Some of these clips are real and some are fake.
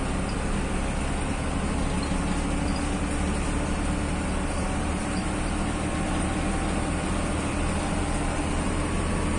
real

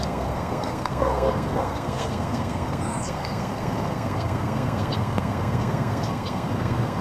fake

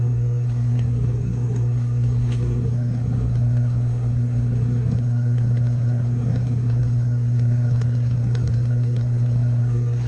fake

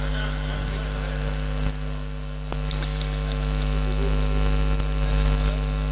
real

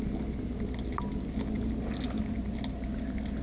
real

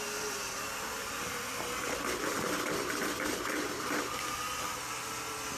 real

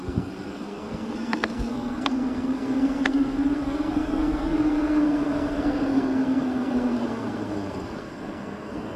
fake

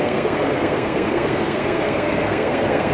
fake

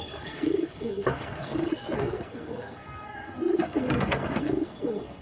fake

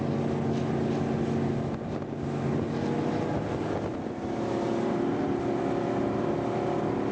real